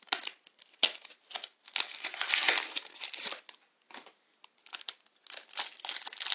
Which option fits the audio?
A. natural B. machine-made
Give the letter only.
A